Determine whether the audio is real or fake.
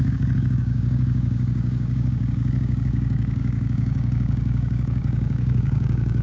fake